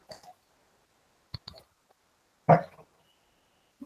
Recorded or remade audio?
recorded